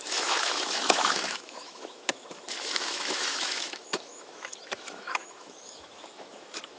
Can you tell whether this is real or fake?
fake